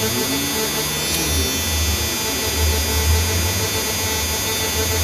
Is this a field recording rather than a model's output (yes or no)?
yes